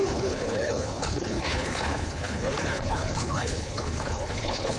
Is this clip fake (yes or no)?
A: yes